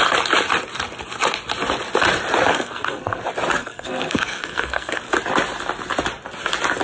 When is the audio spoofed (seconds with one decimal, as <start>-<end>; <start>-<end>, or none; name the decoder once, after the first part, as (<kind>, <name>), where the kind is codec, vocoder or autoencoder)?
2.5-3.2 (codec, SNAC); 3.6-5.0